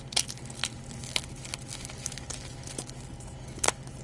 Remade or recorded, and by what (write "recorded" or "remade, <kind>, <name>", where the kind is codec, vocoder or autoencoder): recorded